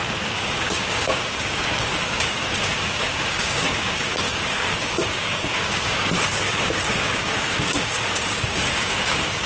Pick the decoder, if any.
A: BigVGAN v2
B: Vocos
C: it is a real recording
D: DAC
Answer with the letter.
D